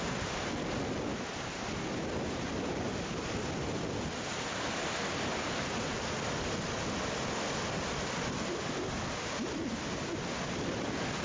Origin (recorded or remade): recorded